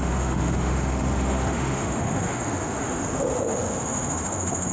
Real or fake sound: fake